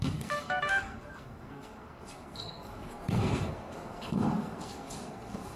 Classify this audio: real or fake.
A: fake